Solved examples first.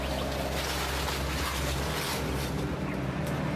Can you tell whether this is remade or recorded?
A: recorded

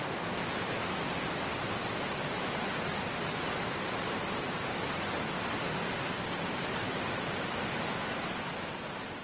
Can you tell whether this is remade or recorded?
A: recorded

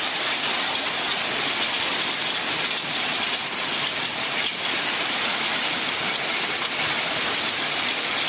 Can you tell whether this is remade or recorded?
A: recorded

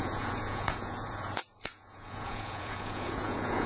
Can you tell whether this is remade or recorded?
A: remade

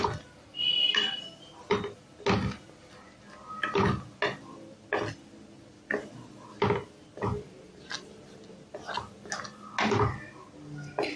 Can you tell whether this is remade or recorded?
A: recorded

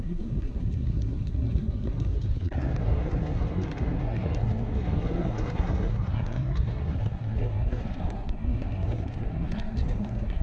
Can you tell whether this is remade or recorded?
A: remade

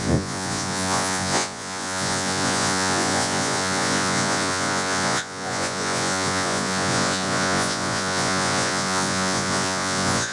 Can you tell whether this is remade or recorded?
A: remade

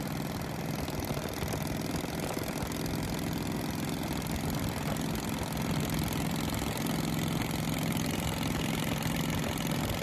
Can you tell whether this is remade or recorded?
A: recorded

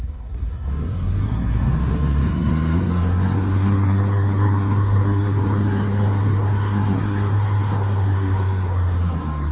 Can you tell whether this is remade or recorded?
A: remade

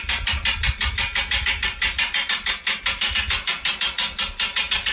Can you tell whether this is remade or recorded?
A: recorded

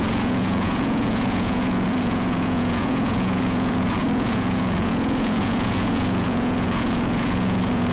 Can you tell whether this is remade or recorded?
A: remade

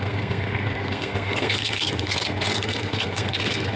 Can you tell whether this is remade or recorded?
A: remade